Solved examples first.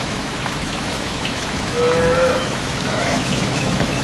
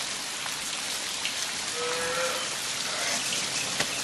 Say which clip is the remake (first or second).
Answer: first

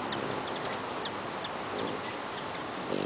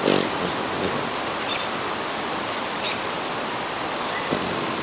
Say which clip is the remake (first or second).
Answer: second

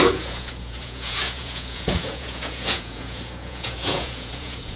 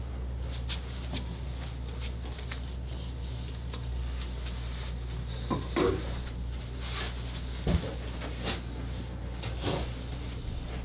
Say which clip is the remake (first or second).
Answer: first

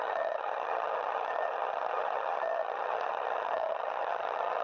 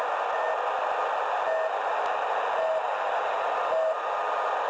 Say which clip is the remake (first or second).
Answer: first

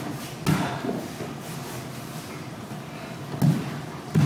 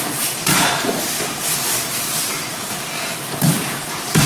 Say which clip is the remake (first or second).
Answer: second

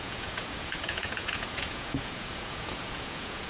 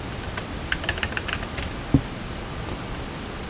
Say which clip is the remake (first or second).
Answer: first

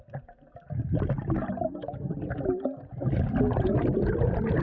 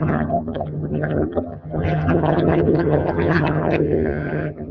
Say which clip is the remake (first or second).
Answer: second